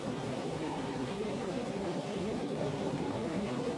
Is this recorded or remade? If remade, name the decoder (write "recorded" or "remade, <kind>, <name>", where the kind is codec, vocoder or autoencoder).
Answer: remade, codec, SNAC